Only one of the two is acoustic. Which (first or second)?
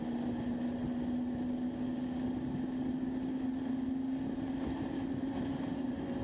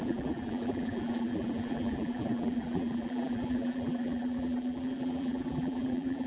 first